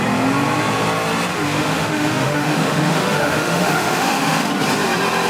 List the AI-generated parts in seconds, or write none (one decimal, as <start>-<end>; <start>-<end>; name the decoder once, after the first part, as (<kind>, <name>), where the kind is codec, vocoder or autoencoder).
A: 1.3-4.5 (autoencoder, DAC-VAE)